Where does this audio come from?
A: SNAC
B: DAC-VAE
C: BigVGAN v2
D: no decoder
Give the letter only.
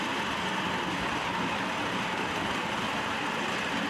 D